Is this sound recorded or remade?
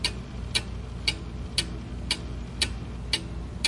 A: recorded